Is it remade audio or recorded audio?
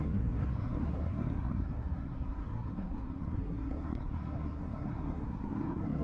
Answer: remade